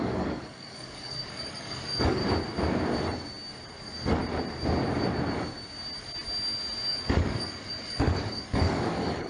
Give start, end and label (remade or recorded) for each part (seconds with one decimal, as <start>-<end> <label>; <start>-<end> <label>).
0.0-2.2 remade; 2.2-3.8 recorded; 3.8-4.2 remade; 4.2-6.9 recorded; 6.9-9.3 remade